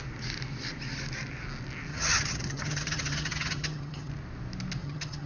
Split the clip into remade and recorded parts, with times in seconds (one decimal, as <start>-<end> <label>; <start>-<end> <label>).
0.0-1.9 recorded; 1.9-4.1 remade; 4.1-4.8 recorded; 4.8-5.3 remade